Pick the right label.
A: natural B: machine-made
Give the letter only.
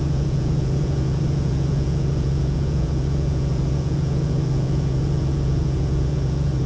B